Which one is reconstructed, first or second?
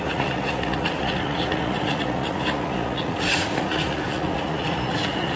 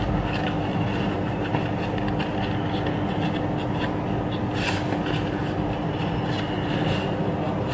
first